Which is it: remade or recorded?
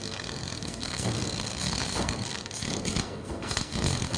remade